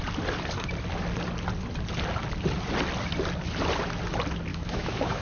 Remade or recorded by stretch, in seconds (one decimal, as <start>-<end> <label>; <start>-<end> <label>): 0.0-4.5 recorded; 4.5-5.2 remade